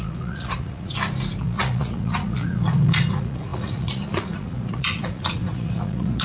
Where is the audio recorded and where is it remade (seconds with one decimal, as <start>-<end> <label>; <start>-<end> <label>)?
0.0-0.9 remade; 0.9-1.4 recorded; 1.4-6.2 remade